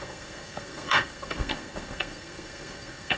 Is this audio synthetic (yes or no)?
yes